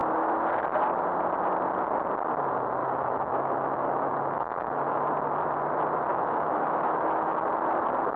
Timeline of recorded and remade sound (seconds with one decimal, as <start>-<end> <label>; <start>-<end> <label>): 0.0-2.8 recorded; 2.8-5.1 remade; 5.1-6.1 recorded; 6.1-7.5 remade; 7.5-8.2 recorded